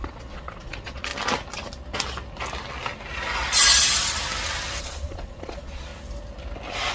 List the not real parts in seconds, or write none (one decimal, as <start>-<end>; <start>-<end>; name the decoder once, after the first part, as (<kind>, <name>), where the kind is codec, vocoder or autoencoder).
0.0-1.1 (vocoder, Vocos); 4.8-5.9